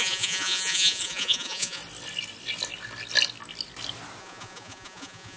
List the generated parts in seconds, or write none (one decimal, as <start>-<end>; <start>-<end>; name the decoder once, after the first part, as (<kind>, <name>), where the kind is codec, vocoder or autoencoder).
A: 0.0-1.8 (vocoder, Vocos); 4.2-5.4